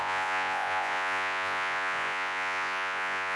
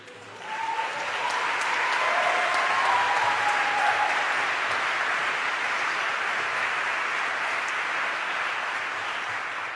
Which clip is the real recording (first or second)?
second